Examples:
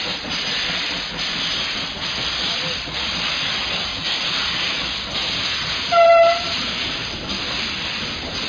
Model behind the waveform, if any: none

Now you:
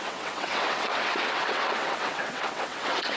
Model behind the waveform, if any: vocoder, WaveNeXt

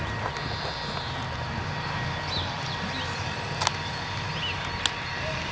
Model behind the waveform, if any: none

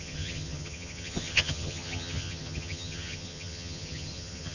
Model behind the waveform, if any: vocoder, HiFi-GAN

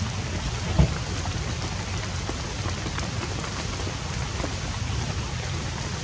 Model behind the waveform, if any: none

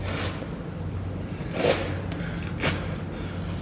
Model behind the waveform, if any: none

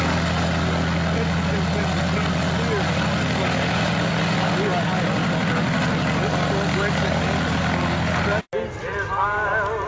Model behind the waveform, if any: none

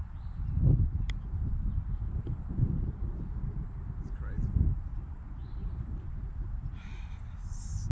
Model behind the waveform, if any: none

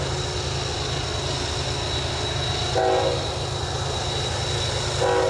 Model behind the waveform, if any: none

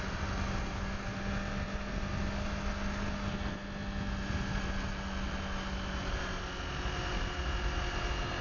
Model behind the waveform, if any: none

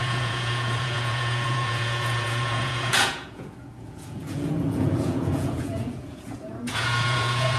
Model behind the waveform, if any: vocoder, Vocos